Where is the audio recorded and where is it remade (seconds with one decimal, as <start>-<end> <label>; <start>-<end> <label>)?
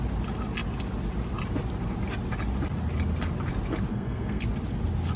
0.0-3.9 recorded; 3.9-4.4 remade; 4.4-5.2 recorded